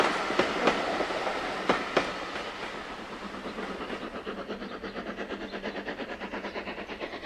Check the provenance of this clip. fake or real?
real